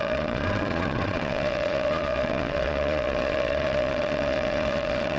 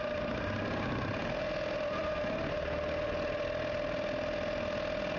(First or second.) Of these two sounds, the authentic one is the second